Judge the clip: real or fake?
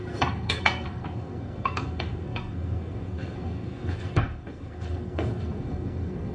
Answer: fake